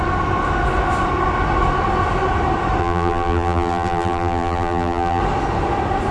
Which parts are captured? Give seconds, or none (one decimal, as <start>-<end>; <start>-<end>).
0.0-2.8; 5.2-6.1